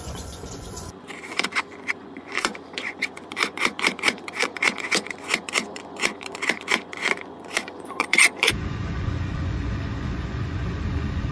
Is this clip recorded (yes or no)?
no